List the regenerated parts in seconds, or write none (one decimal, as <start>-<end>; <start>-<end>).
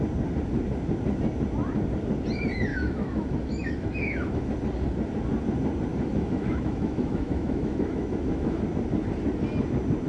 2.7-4.5; 5.9-8.6